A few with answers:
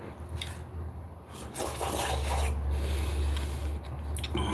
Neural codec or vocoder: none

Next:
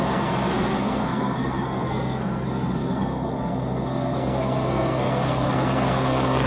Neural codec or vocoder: codec, SNAC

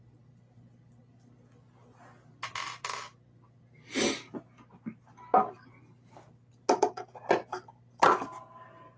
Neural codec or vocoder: none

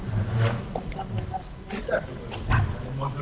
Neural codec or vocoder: none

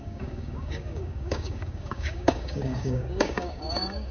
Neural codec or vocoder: codec, DAC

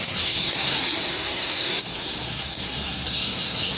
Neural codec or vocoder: codec, SNAC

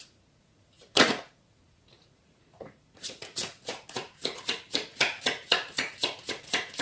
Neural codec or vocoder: vocoder, Vocos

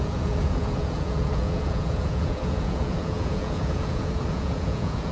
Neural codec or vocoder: vocoder, Vocos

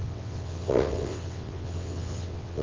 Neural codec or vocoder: vocoder, WaveNeXt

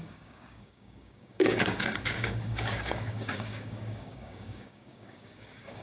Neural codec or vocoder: codec, DAC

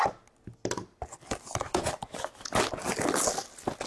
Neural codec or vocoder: none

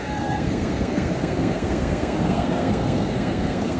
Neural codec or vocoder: codec, SNAC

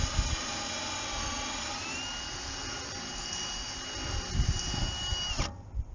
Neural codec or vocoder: none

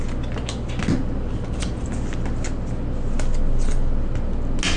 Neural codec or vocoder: none